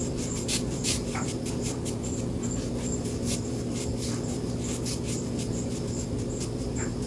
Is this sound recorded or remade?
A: recorded